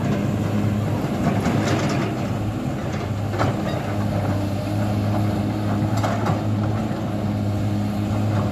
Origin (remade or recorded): recorded